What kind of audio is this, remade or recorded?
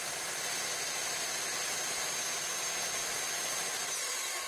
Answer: recorded